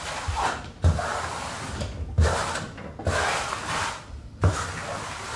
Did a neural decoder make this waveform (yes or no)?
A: no